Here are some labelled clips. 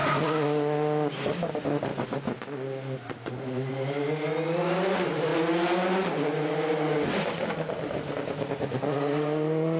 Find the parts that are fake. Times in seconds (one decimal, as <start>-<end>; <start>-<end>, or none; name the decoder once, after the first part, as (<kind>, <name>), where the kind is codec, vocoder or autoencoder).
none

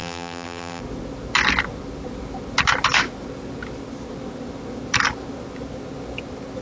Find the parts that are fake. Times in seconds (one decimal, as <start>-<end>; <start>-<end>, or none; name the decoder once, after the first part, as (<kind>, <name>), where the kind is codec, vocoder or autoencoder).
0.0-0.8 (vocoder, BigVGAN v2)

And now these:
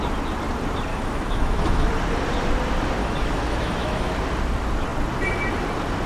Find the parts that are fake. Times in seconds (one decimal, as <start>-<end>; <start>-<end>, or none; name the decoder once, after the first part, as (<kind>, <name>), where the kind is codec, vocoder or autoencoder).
0.9-1.9 (autoencoder, DAC-VAE); 3.0-4.1